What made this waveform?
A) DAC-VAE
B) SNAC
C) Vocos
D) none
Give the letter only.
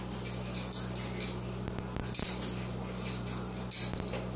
D